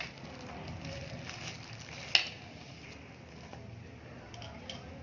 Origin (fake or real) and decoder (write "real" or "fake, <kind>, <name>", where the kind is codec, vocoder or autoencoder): real